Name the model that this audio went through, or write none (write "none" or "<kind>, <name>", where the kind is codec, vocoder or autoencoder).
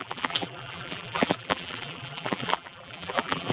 vocoder, BigVGAN v2